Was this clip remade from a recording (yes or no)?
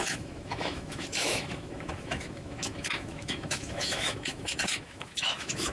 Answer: yes